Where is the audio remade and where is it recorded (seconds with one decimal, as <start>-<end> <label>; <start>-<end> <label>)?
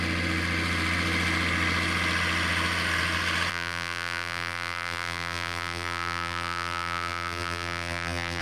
0.0-3.5 recorded; 3.5-8.4 remade